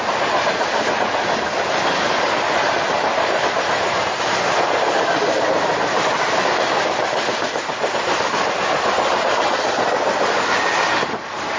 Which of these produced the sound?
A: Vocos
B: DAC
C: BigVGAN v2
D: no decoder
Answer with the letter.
D